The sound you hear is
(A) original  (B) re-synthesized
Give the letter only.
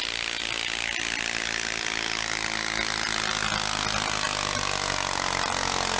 A